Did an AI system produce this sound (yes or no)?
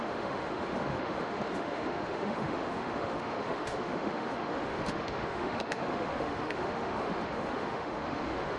yes